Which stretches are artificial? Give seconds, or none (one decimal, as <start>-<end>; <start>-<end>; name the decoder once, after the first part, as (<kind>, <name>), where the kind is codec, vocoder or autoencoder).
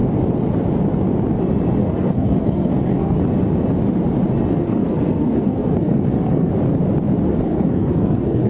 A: 1.8-3.2 (codec, SNAC); 4.5-6.5; 7.3-8.5